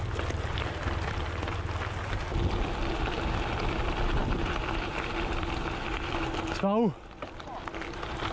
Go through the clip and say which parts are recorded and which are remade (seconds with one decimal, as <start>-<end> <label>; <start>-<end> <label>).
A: 0.0-8.3 recorded